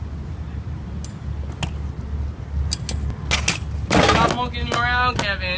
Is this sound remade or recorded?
recorded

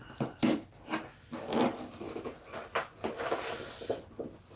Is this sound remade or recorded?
recorded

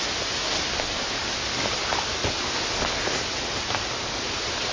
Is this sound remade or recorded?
recorded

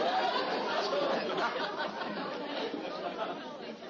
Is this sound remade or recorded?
recorded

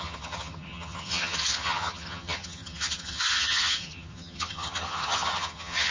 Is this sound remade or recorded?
remade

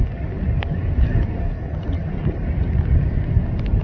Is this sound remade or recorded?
recorded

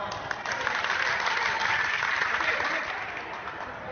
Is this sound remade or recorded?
recorded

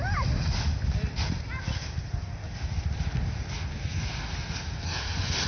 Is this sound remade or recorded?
recorded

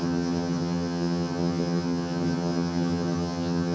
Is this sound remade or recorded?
remade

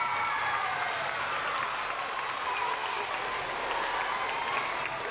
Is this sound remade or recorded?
recorded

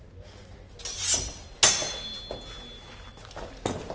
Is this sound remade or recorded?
recorded